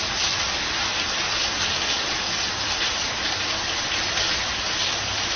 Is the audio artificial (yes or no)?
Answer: no